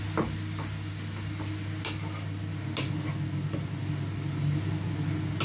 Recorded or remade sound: recorded